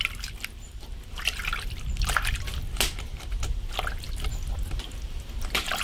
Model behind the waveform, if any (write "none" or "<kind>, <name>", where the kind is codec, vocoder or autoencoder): none